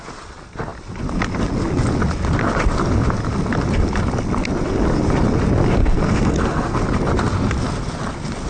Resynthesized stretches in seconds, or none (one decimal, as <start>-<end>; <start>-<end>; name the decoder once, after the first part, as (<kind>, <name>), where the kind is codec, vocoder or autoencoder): 5.8-6.8 (codec, SNAC)